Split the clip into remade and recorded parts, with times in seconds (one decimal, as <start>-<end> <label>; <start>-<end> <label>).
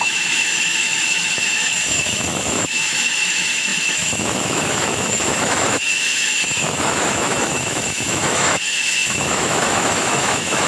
0.0-10.7 remade